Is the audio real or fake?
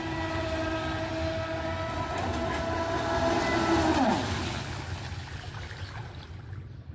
real